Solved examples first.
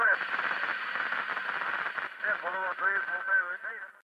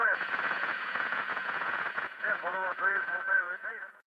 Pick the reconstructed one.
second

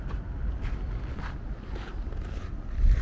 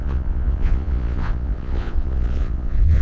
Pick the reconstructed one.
second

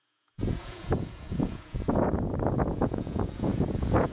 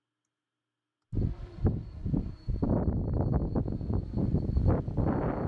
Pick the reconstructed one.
first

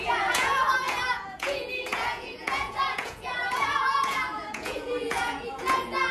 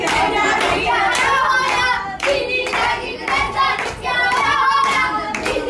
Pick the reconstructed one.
first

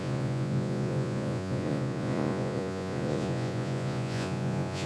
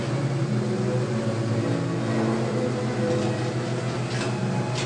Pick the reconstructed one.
first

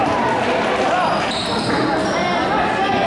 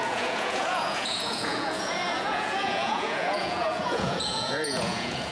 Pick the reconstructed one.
second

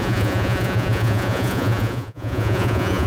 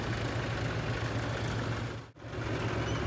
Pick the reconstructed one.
first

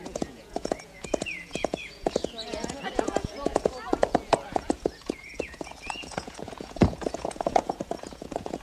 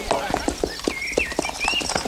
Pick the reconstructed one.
first